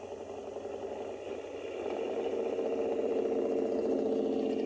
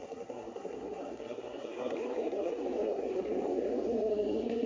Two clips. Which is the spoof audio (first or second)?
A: second